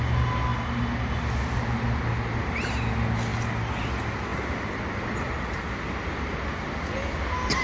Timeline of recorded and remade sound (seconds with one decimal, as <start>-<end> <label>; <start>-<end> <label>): 0.0-7.6 recorded